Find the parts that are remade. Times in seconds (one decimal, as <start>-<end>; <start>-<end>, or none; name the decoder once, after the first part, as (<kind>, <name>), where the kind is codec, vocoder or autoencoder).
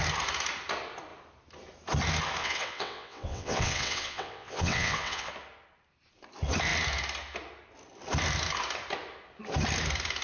2.4-5.3 (vocoder, WaveNeXt)